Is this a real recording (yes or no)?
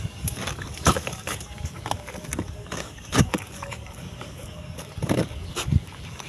no